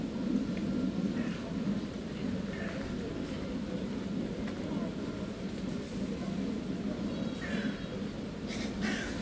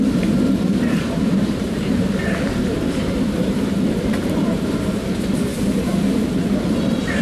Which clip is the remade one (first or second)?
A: second